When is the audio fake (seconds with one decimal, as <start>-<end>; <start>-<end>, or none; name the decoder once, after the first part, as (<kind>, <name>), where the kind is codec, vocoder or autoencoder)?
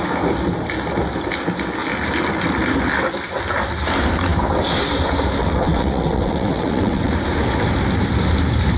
5.4-7.1 (vocoder, WaveNeXt)